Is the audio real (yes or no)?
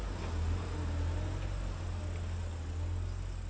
yes